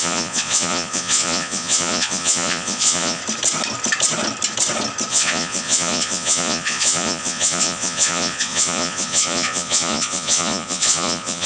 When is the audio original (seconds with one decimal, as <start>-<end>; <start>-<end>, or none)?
3.2-5.1